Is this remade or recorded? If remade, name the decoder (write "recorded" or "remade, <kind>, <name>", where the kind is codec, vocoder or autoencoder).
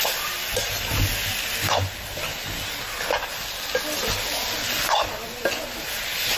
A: recorded